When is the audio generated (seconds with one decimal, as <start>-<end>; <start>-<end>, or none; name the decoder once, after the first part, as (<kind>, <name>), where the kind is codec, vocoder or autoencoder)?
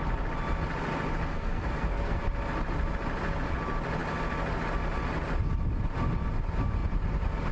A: 1.3-2.2 (codec, SNAC)